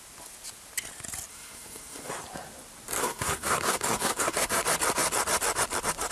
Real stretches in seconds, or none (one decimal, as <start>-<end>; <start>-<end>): 0.0-1.3; 2.1-3.0; 4.6-6.1